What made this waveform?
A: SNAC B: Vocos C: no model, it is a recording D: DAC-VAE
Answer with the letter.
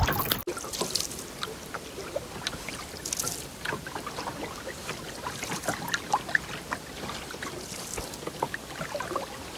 C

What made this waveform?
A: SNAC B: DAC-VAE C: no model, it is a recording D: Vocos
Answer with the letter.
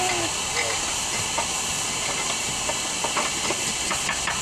C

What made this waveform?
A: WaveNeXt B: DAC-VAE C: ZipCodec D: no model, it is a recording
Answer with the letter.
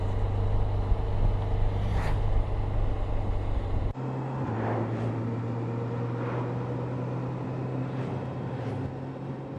D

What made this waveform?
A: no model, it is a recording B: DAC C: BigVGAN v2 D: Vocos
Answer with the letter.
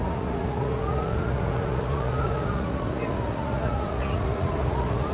D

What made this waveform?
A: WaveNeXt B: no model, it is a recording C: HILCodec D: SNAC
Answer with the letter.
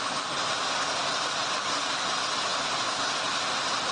B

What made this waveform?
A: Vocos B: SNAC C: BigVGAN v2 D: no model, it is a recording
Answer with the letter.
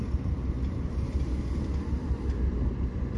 D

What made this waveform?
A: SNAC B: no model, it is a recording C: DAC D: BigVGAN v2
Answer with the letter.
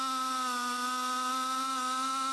B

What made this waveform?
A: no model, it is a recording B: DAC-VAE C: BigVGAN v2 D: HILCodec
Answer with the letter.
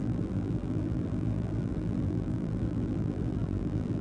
C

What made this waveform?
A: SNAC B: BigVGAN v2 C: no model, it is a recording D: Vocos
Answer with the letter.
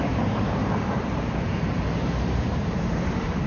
B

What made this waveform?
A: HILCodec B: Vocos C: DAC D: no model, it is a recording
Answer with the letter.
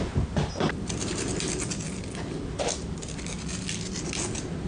D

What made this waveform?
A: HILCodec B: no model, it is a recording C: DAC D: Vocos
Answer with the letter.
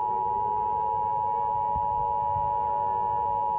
B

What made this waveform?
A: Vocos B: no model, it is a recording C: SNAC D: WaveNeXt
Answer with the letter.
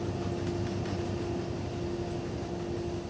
B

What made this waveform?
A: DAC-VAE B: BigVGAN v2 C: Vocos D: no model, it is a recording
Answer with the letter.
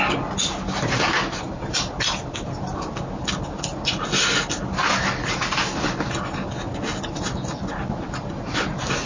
D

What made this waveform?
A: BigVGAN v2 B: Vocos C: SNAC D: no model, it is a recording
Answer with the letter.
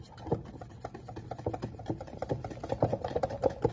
D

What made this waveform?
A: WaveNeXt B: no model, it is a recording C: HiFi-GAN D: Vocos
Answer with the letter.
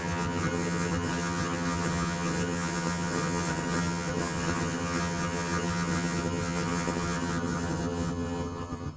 C